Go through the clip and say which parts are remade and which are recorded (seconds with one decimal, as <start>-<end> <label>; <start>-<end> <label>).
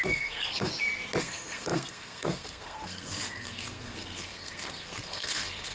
0.0-0.7 remade; 0.7-1.2 recorded; 1.2-5.7 remade